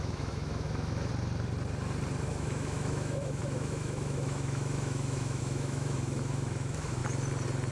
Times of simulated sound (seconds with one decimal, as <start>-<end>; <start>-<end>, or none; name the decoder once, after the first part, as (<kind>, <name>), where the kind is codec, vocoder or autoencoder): 0.0-1.1 (autoencoder, DAC-VAE); 2.3-7.0